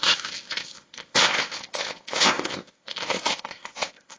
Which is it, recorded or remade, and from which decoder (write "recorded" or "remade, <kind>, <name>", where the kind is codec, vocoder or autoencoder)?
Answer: remade, codec, ZipCodec